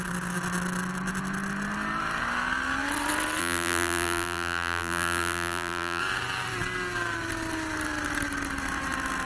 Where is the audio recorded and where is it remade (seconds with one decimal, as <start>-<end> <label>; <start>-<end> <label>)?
0.0-3.4 recorded; 3.4-6.0 remade; 6.0-9.3 recorded